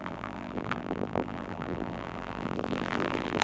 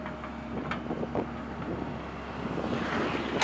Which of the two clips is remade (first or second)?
first